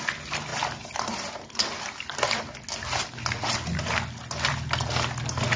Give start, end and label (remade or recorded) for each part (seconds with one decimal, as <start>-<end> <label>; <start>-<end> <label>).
0.0-5.6 recorded